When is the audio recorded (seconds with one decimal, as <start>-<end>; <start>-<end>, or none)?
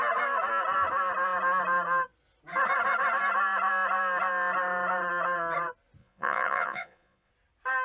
0.0-6.0; 7.3-7.8